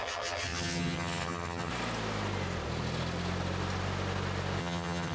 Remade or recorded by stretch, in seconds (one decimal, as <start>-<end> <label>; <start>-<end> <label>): 0.0-1.7 remade; 1.7-4.6 recorded; 4.6-5.1 remade